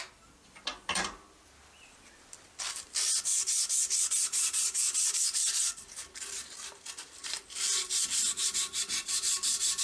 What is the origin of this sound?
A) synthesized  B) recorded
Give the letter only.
A